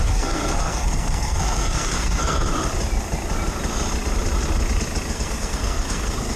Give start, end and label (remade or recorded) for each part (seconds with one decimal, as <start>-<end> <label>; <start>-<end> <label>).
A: 0.0-2.5 remade; 2.5-5.1 recorded; 5.1-6.4 remade